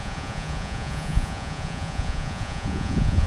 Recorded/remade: remade